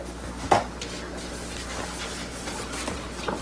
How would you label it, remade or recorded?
recorded